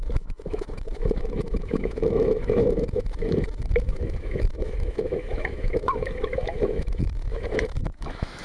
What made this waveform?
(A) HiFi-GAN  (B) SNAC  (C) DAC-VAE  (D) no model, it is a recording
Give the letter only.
C